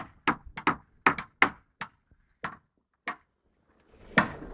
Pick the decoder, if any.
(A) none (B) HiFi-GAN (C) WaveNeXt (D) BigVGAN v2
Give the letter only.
A